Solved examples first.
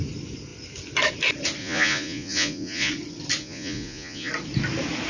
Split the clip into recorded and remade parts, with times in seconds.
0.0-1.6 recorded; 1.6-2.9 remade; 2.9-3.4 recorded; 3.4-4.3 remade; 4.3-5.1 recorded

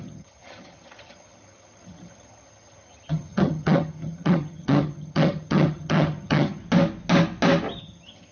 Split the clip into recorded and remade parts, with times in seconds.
0.0-6.6 remade; 6.6-7.8 recorded; 7.8-8.3 remade

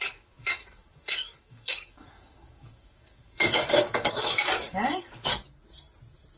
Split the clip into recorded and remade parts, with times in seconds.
0.0-5.3 remade; 5.3-6.4 recorded

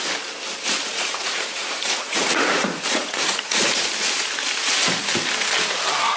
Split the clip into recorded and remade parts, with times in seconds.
0.0-0.8 recorded; 0.8-3.8 remade; 3.8-6.2 recorded